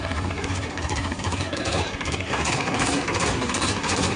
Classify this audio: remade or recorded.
remade